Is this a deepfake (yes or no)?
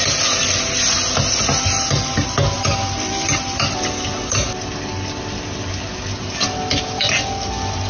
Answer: no